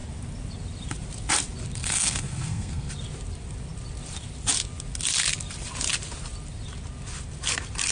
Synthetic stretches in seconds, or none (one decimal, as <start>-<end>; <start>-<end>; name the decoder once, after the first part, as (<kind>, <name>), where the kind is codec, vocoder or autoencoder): 1.8-2.9 (codec, SNAC)